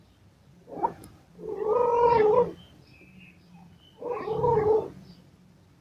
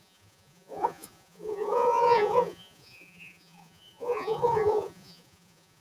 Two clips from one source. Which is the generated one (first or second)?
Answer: second